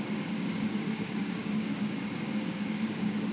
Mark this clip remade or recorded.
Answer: remade